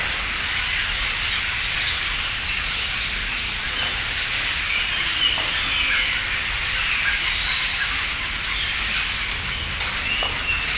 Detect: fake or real real